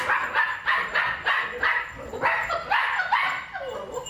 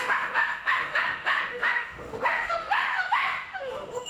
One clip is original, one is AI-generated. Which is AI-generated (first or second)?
second